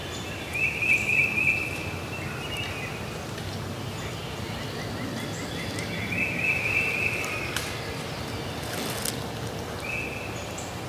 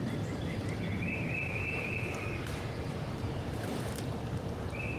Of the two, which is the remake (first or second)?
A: second